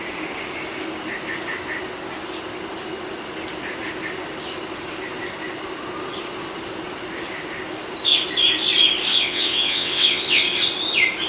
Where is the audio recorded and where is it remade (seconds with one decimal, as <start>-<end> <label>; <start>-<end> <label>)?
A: 0.0-9.1 recorded; 9.1-10.4 remade; 10.4-11.3 recorded